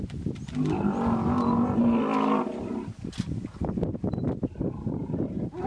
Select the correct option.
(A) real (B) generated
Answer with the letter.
A